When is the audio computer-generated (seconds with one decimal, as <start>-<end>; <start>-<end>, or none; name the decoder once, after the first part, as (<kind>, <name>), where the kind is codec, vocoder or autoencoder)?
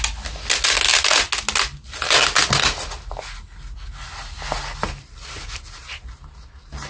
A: none